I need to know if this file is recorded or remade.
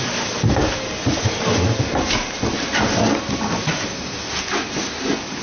recorded